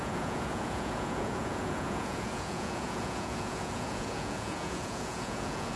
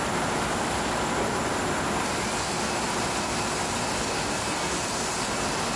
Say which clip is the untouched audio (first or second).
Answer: second